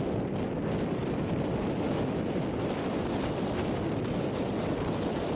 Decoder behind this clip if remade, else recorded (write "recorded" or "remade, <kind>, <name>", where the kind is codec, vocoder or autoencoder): recorded